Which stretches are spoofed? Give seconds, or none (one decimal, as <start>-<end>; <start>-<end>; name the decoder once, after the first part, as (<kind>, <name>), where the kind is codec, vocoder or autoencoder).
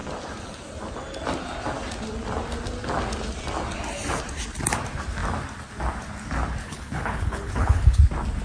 6.6-8.0 (codec, HILCodec)